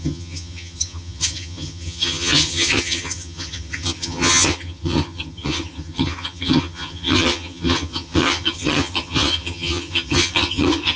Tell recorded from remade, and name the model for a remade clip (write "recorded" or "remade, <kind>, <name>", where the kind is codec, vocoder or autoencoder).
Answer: remade, vocoder, HiFi-GAN